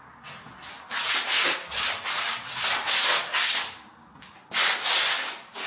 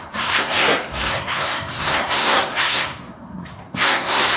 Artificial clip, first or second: second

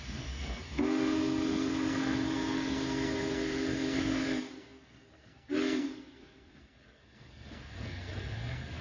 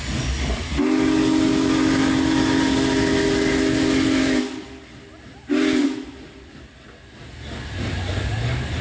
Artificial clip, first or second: first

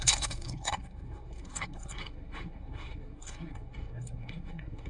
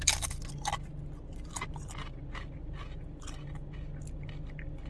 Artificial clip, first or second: first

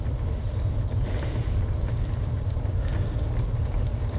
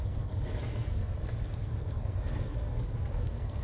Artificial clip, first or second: second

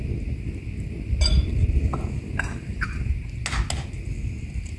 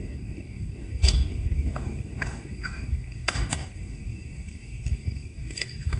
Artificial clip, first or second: second